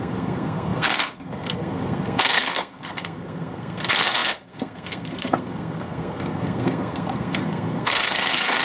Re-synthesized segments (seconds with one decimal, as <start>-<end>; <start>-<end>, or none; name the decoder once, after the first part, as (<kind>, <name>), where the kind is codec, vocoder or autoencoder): 0.0-8.6 (codec, SNAC)